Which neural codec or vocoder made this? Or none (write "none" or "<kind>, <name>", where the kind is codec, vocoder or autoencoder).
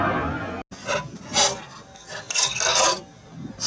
none